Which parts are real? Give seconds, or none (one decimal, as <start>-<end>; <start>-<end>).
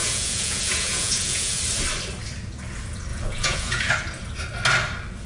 1.6-3.1; 3.9-5.3